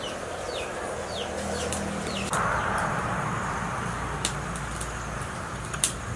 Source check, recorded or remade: recorded